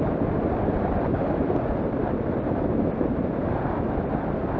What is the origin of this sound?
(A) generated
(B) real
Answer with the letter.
B